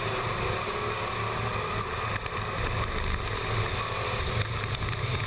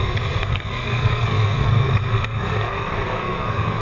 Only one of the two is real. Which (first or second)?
first